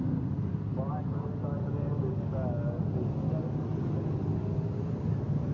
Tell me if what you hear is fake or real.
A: real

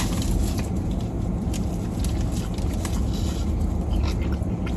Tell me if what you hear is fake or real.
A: real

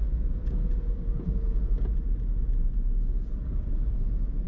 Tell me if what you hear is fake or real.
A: fake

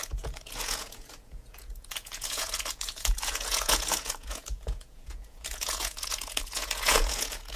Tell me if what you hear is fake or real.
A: fake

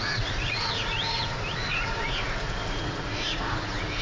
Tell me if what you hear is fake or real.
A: fake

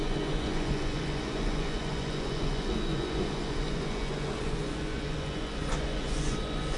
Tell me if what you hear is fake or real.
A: fake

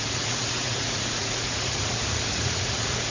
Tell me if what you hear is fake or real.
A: fake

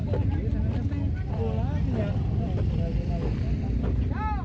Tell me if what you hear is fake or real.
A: real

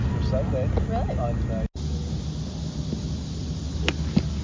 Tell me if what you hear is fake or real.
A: real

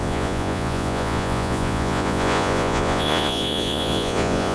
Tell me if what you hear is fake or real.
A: fake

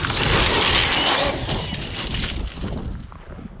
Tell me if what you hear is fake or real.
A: real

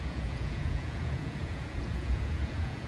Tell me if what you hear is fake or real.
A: fake